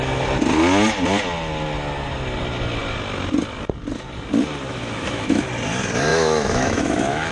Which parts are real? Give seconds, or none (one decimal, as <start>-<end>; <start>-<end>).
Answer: 0.0-4.7; 5.4-6.1